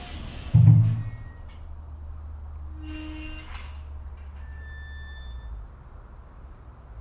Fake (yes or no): no